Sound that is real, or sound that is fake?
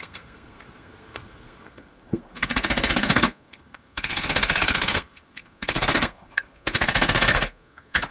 fake